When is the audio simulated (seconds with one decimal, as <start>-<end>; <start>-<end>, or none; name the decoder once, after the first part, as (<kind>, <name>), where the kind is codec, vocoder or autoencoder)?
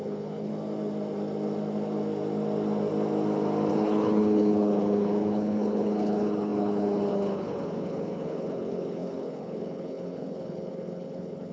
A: 0.0-0.5 (codec, HILCodec); 3.7-11.5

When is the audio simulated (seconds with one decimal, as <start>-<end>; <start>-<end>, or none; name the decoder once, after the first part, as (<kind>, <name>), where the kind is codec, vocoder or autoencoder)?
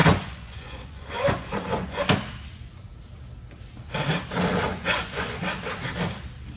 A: 0.0-2.0 (vocoder, Vocos); 4.7-5.4